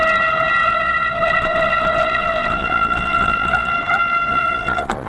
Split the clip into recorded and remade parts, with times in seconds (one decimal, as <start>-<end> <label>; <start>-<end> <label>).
0.0-0.6 recorded; 0.6-3.7 remade; 3.7-4.3 recorded; 4.3-5.1 remade